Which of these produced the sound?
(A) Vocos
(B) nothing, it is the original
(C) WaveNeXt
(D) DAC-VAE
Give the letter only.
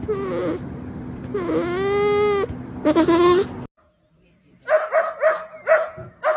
B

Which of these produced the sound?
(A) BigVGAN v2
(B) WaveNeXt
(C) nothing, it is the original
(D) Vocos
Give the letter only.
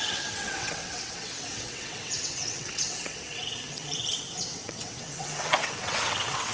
B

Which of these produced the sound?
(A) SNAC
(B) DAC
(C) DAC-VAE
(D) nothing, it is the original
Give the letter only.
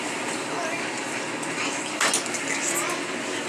D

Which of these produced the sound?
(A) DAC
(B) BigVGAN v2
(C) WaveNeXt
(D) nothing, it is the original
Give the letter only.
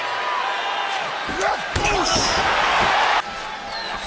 D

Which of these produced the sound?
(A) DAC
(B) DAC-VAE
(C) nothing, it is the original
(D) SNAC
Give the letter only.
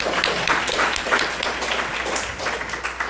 C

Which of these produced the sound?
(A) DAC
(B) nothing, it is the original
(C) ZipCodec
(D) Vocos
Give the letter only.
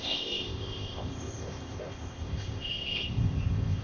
C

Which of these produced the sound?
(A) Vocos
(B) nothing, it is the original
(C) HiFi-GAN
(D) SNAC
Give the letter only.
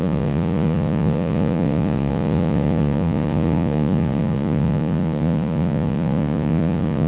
A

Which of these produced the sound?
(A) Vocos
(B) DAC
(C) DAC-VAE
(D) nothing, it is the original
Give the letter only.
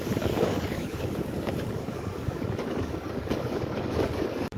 B